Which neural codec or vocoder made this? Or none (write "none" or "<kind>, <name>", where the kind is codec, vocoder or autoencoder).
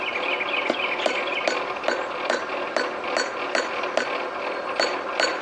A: none